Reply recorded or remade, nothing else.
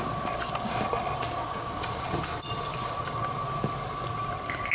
recorded